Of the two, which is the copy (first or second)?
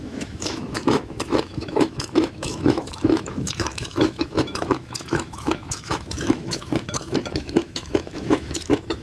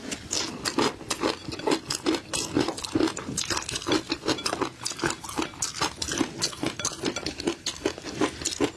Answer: first